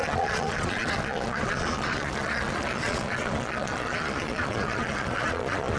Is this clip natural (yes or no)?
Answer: no